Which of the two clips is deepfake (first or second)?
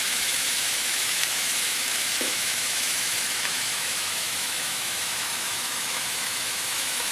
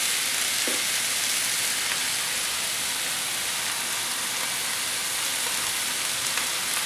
first